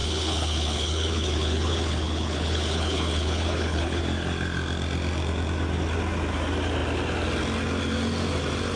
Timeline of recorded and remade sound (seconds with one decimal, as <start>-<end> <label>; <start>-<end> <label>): 0.0-4.0 remade; 4.0-8.8 recorded